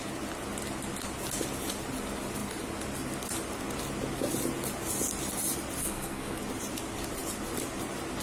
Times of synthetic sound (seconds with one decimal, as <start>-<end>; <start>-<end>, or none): 5.8-6.4